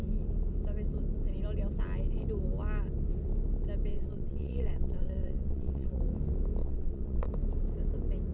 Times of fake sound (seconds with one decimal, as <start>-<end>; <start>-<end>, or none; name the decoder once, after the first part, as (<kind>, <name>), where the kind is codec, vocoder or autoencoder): 3.9-6.0 (vocoder, WaveNeXt); 6.6-7.3